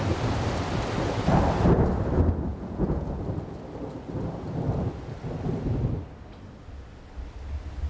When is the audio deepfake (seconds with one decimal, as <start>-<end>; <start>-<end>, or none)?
2.5-3.2